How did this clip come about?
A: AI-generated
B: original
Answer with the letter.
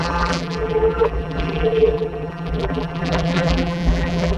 A